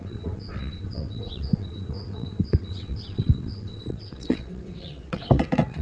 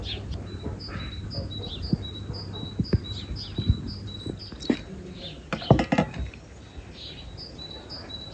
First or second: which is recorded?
second